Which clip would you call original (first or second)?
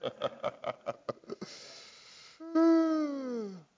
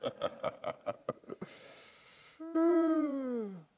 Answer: first